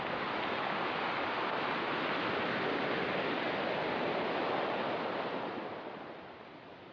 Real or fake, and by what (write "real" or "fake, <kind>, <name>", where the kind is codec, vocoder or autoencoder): real